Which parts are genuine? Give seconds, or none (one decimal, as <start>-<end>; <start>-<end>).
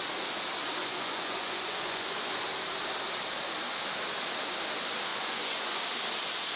0.0-0.8; 2.2-5.1; 5.8-6.6